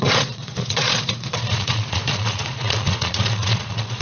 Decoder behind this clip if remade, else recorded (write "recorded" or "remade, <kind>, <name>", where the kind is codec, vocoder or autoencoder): remade, vocoder, Vocos